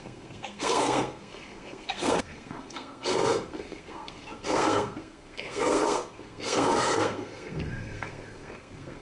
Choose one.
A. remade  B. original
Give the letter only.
A